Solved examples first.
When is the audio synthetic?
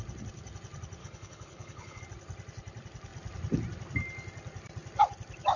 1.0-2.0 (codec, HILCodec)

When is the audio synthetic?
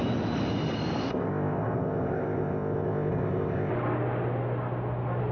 1.0-3.7 (codec, ZipCodec)